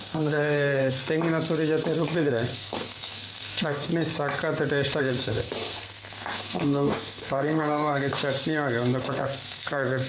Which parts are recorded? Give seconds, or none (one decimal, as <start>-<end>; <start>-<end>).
1.0-2.2; 3.9-5.0; 8.2-9.0